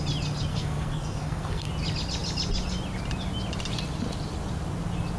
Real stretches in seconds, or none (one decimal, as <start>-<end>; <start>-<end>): 0.0-0.5; 1.7-5.2